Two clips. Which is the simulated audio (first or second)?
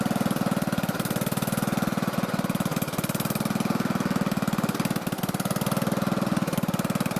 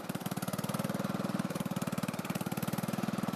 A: second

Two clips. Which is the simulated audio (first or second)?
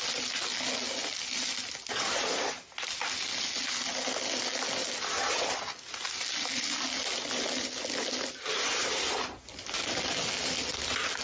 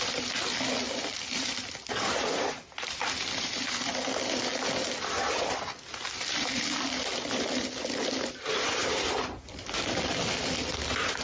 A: second